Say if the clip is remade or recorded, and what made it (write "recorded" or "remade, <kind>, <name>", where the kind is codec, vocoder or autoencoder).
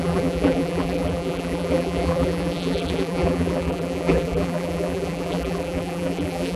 remade, vocoder, BigVGAN v2